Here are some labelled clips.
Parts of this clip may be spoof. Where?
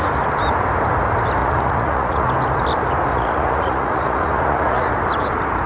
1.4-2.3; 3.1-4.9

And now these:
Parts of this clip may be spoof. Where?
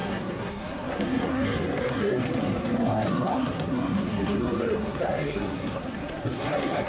0.0-6.9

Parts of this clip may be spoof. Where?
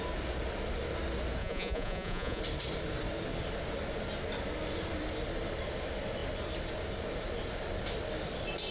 1.4-2.4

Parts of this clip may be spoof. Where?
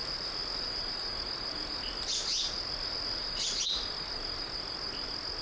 none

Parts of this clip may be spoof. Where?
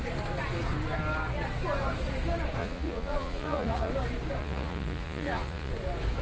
2.6-3.9; 4.4-5.7